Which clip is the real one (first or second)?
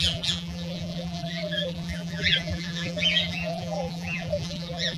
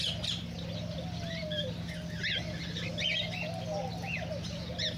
second